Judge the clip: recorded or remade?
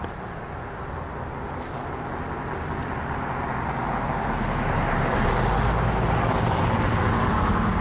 recorded